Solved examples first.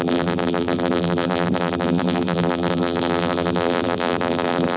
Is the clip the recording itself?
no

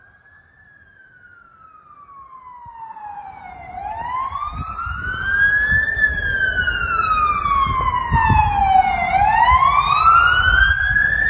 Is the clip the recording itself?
yes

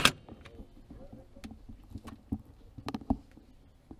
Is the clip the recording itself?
yes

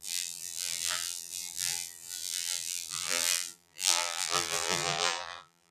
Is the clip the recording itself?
no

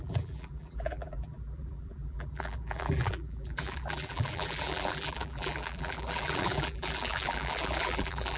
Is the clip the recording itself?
no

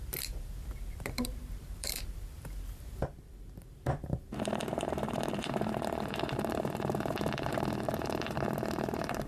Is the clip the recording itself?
no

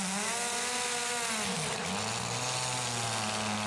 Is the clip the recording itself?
yes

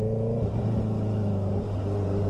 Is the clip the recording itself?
yes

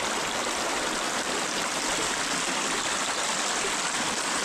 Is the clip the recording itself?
yes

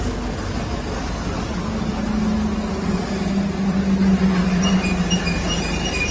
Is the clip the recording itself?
yes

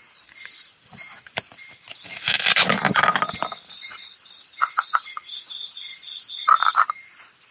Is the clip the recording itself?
yes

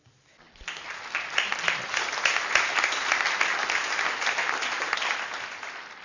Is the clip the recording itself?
yes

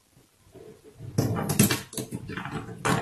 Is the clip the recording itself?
yes